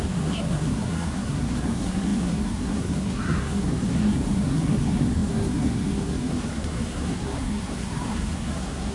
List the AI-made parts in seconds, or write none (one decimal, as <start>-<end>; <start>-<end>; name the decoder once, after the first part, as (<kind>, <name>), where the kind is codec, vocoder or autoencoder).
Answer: 0.0-8.9 (codec, SNAC)